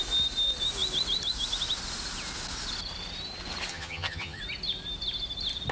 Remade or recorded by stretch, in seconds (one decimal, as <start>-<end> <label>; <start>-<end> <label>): 0.0-3.7 recorded; 3.7-4.4 remade; 4.4-5.7 recorded